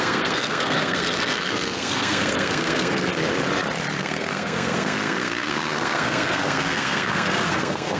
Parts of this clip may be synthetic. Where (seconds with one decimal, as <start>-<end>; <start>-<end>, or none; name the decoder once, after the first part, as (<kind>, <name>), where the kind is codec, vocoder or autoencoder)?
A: 0.0-3.1 (codec, SNAC); 4.0-8.0